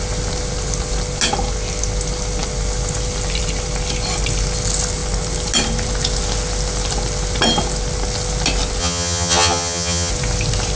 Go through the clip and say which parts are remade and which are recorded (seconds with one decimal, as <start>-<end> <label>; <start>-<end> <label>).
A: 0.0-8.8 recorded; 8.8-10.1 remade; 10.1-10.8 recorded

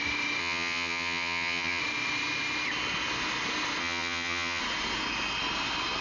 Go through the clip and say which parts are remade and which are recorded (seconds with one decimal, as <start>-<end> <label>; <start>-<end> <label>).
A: 0.0-0.4 recorded; 0.4-1.8 remade; 1.8-3.8 recorded; 3.8-4.6 remade; 4.6-6.0 recorded

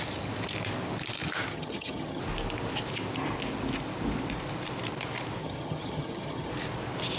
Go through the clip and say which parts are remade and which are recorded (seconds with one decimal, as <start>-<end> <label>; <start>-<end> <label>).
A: 0.0-1.5 recorded; 1.5-2.2 remade; 2.2-5.4 recorded; 5.4-6.5 remade; 6.5-7.2 recorded